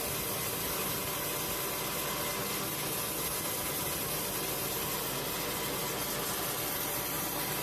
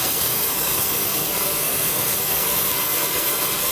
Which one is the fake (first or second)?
second